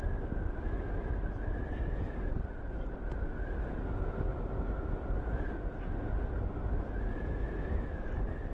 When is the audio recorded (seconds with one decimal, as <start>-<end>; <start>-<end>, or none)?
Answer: 0.0-8.5